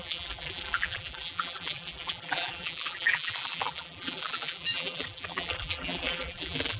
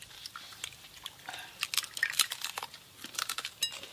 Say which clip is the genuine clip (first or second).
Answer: second